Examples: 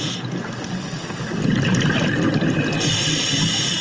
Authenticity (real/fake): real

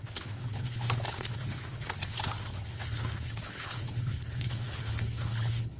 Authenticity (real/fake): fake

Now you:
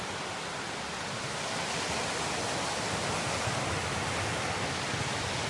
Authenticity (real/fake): real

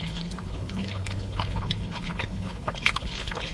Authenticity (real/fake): fake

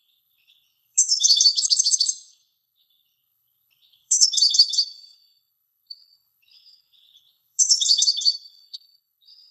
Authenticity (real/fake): fake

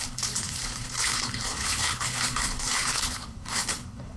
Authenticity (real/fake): fake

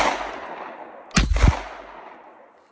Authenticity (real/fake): real